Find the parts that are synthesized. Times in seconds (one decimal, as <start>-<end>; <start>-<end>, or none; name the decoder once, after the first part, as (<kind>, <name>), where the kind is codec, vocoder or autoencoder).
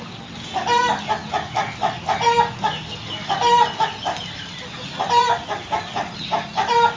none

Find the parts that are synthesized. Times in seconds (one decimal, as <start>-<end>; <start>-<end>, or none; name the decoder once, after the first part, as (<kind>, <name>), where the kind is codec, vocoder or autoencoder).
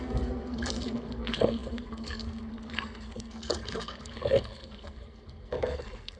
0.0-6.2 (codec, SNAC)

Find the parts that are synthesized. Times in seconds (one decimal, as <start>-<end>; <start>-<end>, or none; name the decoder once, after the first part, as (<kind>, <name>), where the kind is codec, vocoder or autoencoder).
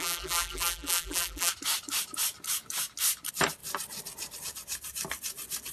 0.0-1.5 (vocoder, BigVGAN v2)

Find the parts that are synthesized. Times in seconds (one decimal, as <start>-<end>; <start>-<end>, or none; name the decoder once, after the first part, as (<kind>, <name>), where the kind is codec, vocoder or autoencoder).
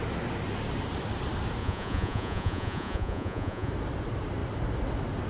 1.6-3.7 (vocoder, Vocos)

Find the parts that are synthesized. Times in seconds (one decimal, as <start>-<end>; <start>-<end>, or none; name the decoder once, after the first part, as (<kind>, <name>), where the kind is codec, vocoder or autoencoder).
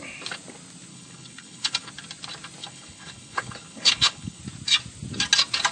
0.9-1.9 (codec, HILCodec); 2.6-4.4